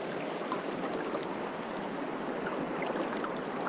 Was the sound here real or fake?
real